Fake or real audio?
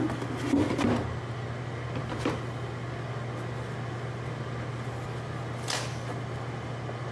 real